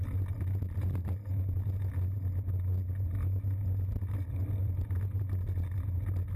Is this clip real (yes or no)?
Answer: yes